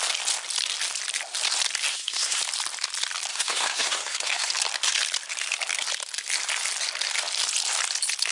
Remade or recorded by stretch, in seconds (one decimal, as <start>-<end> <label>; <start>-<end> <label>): 0.0-1.9 recorded; 1.9-2.4 remade; 2.4-3.3 recorded; 3.3-4.5 remade; 4.5-8.3 recorded

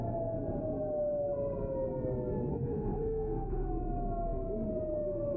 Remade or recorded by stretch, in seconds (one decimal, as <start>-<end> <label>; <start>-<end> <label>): 0.0-2.5 recorded; 2.5-3.7 remade; 3.7-5.4 recorded

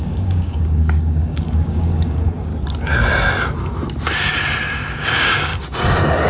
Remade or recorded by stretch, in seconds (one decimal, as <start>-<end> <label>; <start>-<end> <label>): 0.0-2.5 remade; 2.5-4.9 recorded; 4.9-5.5 remade; 5.5-6.3 recorded

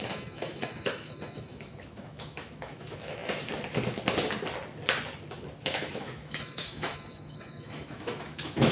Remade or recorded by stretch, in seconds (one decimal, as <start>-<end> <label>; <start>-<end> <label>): 0.0-3.2 remade; 3.2-5.6 recorded; 5.6-8.7 remade

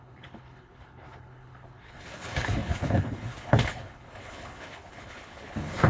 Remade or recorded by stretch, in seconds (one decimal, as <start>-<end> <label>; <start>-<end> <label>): 0.0-5.9 remade

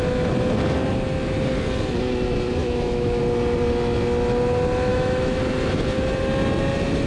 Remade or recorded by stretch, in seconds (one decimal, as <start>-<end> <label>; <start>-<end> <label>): 0.0-2.6 recorded; 2.6-3.2 remade; 3.2-4.9 recorded; 4.9-5.4 remade; 5.4-7.1 recorded

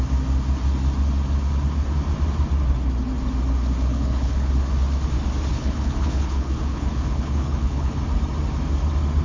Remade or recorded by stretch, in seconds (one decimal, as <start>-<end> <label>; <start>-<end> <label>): 0.0-3.9 recorded; 3.9-4.5 remade; 4.5-5.5 recorded; 5.5-8.0 remade; 8.0-9.2 recorded

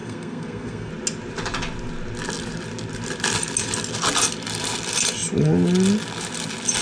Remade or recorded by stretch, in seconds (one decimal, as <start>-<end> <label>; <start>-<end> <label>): 0.0-0.9 remade; 0.9-6.8 recorded